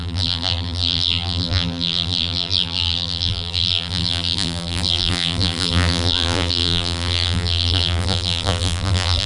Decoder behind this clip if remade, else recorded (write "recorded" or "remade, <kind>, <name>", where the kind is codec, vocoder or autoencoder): remade, vocoder, BigVGAN v2